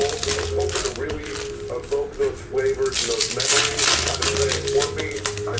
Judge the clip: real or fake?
real